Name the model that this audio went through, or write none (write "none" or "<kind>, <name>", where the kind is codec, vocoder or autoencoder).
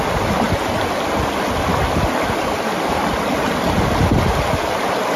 none